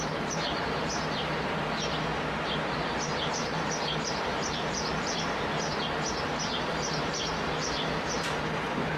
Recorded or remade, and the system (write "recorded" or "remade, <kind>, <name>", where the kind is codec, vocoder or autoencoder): remade, vocoder, BigVGAN v2